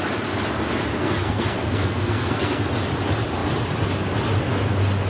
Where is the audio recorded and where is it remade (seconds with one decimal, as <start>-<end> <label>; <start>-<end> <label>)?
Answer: 0.0-1.0 recorded; 1.0-2.7 remade; 2.7-5.1 recorded

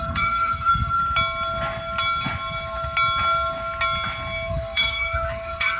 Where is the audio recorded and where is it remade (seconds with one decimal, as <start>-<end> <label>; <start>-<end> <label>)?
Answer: 0.0-1.0 remade; 1.0-4.5 recorded; 4.5-5.8 remade